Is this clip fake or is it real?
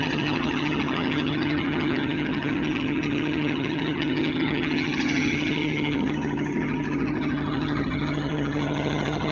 fake